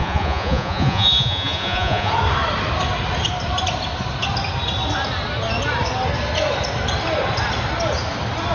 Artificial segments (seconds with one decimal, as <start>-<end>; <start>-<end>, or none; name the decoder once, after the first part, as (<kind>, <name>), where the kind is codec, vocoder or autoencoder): 0.0-2.1 (vocoder, Vocos)